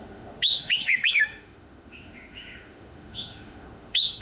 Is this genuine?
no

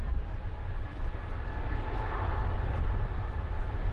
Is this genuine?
yes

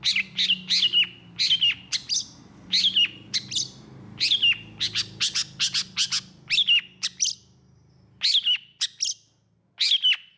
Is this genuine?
yes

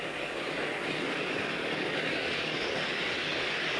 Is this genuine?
no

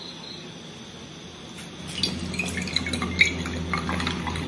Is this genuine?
yes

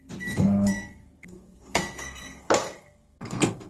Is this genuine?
no